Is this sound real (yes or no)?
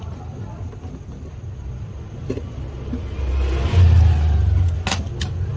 yes